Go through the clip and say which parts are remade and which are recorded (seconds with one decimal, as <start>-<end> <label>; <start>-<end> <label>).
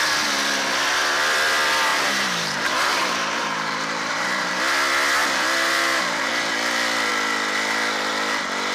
0.0-1.9 recorded; 1.9-4.6 remade; 4.6-5.2 recorded; 5.2-6.3 remade; 6.3-8.7 recorded